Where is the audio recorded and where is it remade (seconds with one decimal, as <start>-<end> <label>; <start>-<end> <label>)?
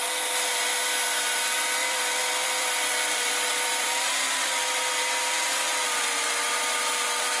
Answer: 0.0-1.8 recorded; 1.8-3.3 remade; 3.3-3.7 recorded; 3.7-5.0 remade; 5.0-7.4 recorded